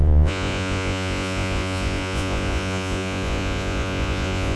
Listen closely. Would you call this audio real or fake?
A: fake